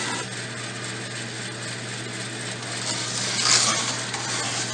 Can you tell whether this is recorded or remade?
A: recorded